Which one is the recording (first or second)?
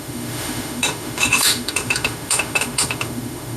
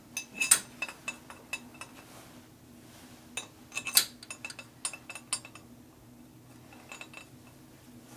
second